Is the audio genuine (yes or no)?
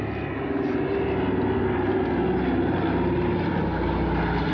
yes